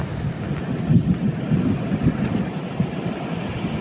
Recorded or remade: recorded